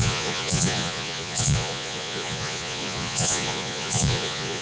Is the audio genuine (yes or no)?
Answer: no